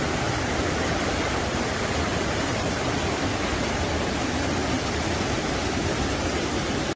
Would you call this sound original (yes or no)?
no